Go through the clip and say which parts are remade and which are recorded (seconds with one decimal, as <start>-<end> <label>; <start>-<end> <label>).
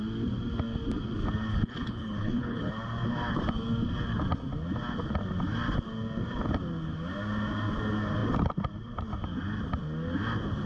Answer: 0.0-1.5 recorded; 1.5-2.7 remade; 2.7-10.7 recorded